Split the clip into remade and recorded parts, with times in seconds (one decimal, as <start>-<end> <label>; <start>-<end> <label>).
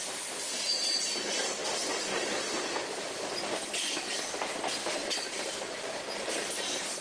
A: 0.0-7.0 recorded